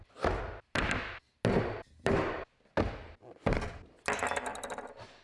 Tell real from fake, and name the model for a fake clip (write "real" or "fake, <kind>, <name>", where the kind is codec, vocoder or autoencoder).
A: real